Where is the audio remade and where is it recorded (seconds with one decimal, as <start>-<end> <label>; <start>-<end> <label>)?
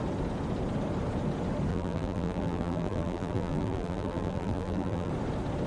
0.0-1.7 recorded; 1.7-5.1 remade; 5.1-5.7 recorded